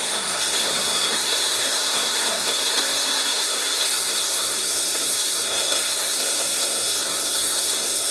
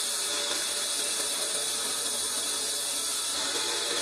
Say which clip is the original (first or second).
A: second